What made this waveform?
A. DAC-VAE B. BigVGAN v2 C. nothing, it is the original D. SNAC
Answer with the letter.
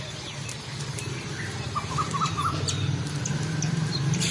B